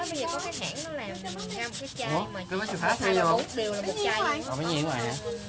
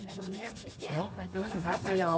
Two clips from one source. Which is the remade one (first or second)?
second